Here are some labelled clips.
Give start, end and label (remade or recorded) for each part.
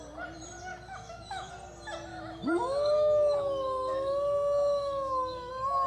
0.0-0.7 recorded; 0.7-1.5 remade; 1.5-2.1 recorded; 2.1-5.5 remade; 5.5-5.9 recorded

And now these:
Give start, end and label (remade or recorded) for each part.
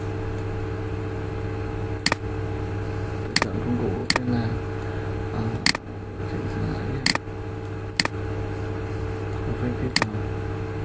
0.0-10.8 recorded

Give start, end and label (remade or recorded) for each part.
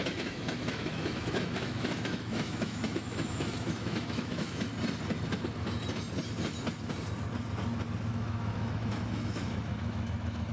0.0-4.7 remade; 4.7-8.1 recorded; 8.1-10.5 remade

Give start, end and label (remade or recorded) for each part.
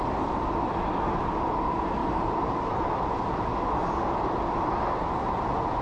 0.0-5.8 recorded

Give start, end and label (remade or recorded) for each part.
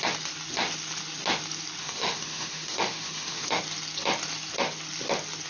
0.0-1.8 recorded; 1.8-3.6 remade; 3.6-5.5 recorded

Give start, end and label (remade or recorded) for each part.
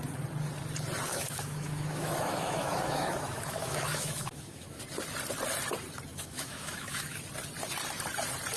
0.0-1.1 recorded; 1.1-4.8 remade; 4.8-6.1 recorded; 6.1-7.2 remade; 7.2-8.6 recorded